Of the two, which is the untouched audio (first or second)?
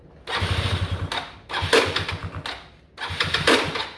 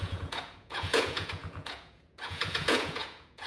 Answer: first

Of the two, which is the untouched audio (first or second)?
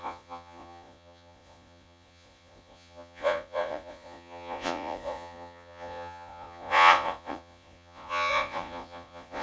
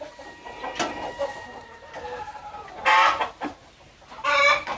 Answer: second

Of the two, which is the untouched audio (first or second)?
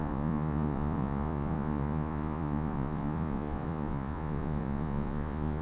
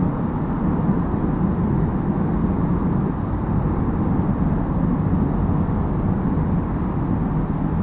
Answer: second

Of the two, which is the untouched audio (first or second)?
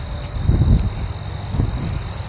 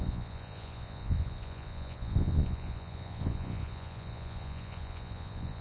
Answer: first